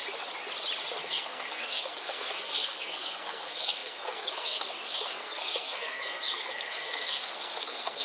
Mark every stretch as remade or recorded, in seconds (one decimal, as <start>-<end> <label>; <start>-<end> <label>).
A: 0.0-1.0 recorded; 1.0-8.0 remade